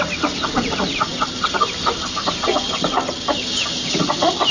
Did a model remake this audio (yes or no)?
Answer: no